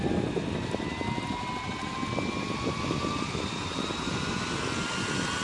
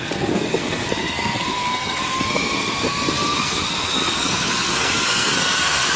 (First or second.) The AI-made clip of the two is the second